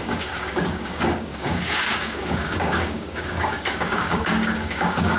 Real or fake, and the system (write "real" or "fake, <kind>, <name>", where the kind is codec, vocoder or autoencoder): fake, codec, DAC